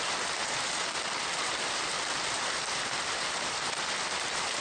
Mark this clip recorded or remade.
recorded